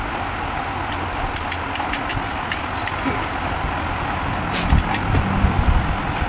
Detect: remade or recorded recorded